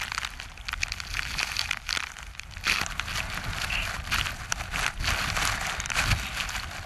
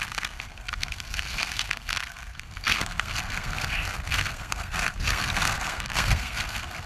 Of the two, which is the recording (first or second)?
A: first